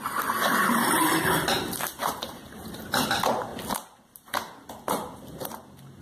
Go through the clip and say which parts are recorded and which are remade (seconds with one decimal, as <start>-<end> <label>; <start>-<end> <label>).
0.0-2.0 recorded; 2.0-2.9 remade; 2.9-3.5 recorded; 3.5-4.7 remade; 4.7-6.0 recorded